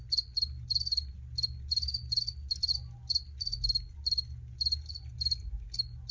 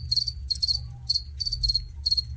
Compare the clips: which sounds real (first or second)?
first